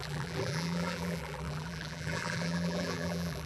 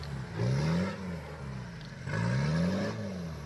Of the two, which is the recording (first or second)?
second